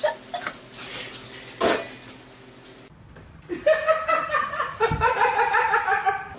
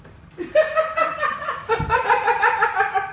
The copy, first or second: first